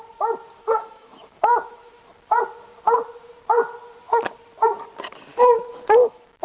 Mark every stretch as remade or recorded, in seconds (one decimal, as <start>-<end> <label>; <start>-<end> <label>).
0.0-0.6 recorded; 0.6-2.0 remade; 2.0-5.3 recorded; 5.3-6.4 remade